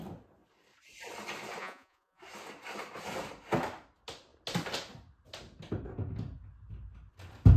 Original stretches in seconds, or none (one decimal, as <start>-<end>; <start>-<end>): 0.0-1.6; 2.2-7.6